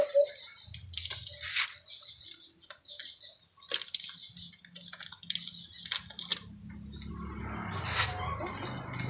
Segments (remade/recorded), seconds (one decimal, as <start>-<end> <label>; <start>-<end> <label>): 0.0-9.1 recorded